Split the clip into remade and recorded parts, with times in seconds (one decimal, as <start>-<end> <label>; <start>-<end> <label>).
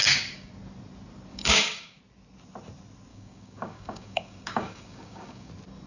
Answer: 0.0-0.5 remade; 0.5-1.3 recorded; 1.3-2.0 remade; 2.0-3.1 recorded; 3.1-5.5 remade; 5.5-5.9 recorded